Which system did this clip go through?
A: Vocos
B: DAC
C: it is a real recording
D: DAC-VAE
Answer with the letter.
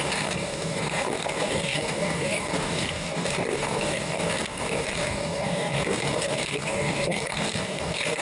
B